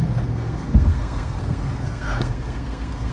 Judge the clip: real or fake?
fake